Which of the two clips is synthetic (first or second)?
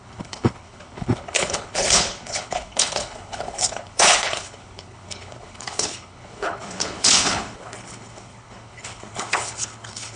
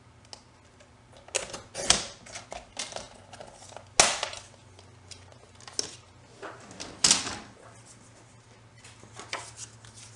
first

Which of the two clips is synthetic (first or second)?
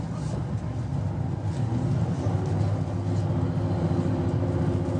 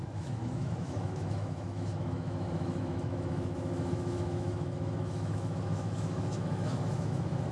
second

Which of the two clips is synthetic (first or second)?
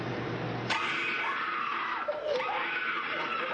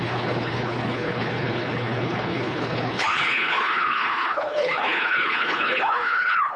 second